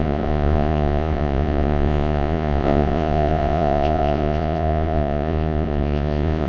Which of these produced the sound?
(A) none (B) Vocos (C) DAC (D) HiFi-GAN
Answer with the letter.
B